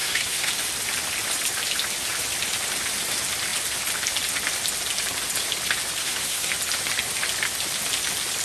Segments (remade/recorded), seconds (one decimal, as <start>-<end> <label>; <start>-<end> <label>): 0.0-0.5 remade; 0.5-6.0 recorded; 6.0-6.5 remade; 6.5-8.4 recorded